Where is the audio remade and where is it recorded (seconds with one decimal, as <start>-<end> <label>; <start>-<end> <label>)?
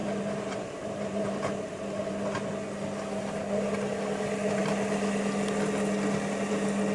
0.0-2.1 remade; 2.1-6.9 recorded